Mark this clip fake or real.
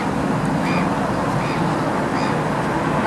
real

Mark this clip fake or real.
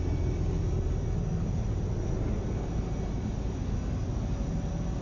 real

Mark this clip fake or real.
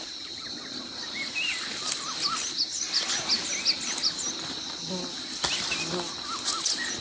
real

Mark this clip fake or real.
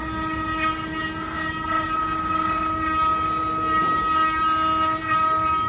real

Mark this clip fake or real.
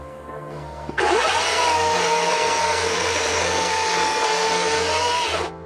fake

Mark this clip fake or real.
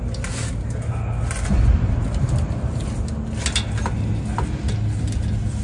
real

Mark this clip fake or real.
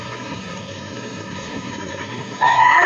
fake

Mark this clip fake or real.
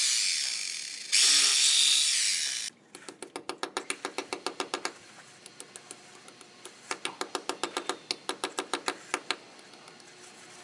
real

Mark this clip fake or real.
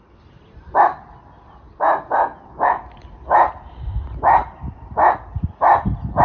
real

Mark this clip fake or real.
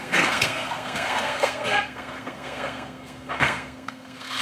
fake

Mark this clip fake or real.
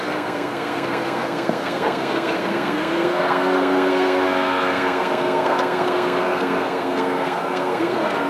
fake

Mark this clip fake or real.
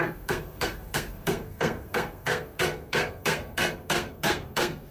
fake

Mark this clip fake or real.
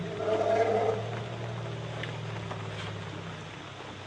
real